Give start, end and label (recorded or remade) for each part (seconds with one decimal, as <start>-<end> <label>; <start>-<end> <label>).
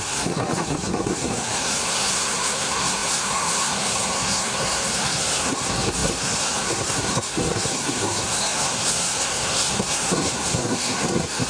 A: 0.0-11.5 remade